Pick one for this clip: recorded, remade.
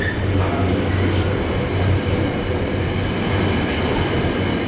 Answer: recorded